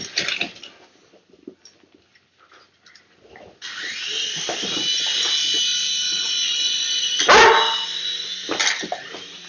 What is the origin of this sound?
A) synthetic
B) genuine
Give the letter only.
B